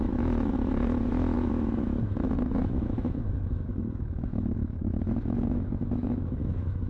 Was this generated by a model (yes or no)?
yes